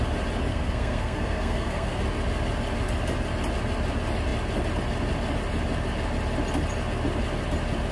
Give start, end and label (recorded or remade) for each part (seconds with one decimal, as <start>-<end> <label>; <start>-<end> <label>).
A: 0.0-0.5 recorded; 0.5-2.0 remade; 2.0-7.9 recorded